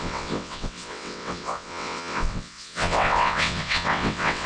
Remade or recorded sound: remade